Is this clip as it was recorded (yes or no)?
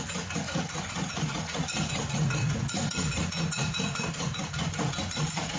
no